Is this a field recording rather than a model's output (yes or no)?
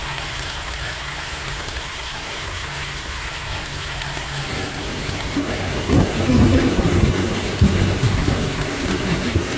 no